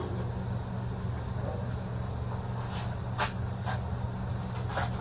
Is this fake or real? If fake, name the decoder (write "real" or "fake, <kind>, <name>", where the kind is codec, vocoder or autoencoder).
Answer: real